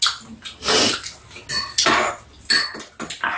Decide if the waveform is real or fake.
real